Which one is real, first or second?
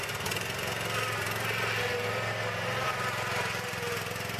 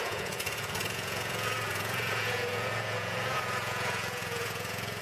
first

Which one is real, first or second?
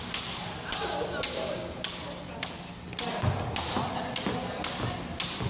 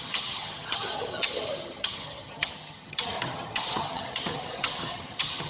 first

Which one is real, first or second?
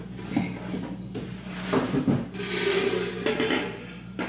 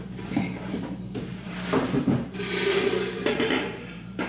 first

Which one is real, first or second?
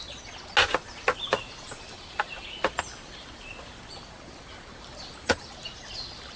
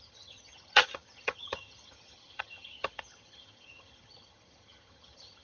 first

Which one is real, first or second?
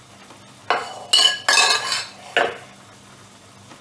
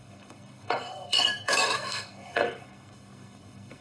first